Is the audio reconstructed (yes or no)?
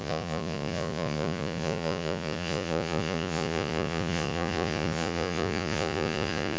yes